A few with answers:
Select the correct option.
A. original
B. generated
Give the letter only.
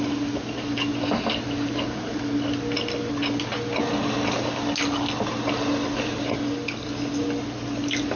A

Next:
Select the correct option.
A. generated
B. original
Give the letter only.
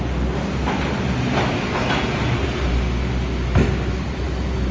B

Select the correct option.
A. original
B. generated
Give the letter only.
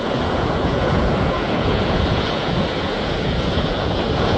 B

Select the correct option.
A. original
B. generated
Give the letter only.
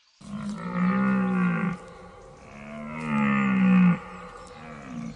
A